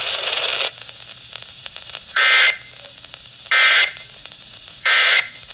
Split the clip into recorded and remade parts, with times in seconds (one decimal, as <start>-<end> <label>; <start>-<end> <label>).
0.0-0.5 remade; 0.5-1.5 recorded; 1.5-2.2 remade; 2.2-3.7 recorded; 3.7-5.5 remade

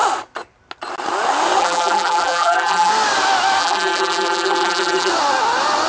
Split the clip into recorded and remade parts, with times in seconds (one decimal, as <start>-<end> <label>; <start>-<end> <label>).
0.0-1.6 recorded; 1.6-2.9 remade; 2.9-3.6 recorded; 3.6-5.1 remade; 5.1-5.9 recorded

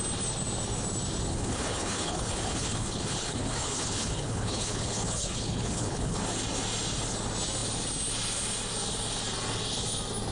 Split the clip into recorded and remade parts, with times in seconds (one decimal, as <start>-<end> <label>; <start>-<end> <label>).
0.0-1.3 recorded; 1.3-6.2 remade; 6.2-10.3 recorded